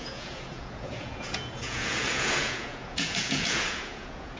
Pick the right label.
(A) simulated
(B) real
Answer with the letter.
A